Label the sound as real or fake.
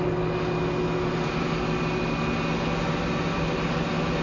real